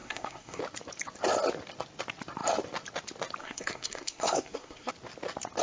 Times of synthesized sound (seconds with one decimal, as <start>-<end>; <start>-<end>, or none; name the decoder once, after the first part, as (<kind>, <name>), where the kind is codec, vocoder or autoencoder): 0.0-0.6 (codec, SNAC); 3.4-4.9